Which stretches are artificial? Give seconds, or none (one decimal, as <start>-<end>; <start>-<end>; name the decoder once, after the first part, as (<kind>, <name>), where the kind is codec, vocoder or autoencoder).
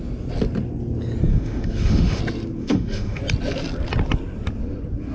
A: 1.3-2.2 (autoencoder, DAC-VAE); 2.6-3.2